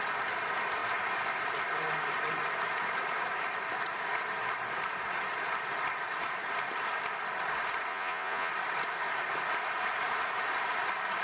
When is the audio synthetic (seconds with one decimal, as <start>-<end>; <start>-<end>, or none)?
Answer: 7.9-8.5